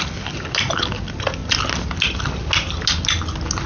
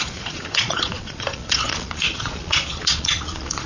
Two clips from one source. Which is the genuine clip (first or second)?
first